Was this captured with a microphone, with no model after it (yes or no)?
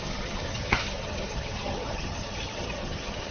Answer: no